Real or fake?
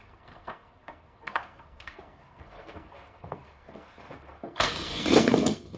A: fake